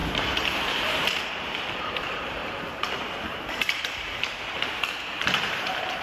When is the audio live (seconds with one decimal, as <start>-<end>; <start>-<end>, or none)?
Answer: none